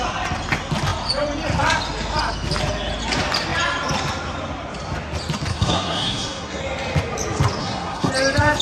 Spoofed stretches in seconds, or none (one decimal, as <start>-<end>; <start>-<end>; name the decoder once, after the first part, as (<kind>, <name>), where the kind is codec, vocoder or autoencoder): 5.5-6.6 (codec, SNAC); 7.6-8.1